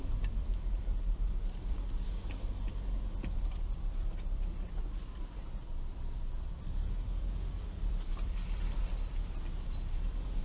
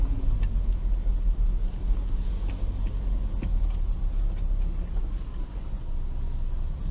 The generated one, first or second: first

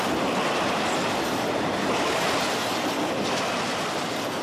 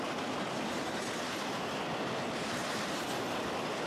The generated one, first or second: second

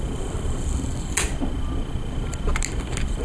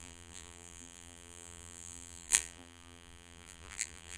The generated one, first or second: second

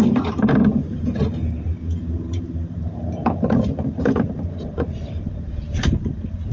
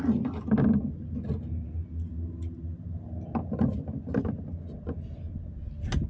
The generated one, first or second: first